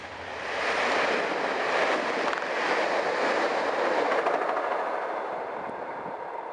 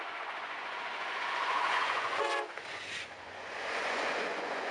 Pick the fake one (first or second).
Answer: second